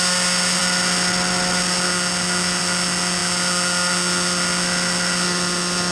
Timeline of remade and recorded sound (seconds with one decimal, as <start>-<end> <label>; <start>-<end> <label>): 0.0-5.9 recorded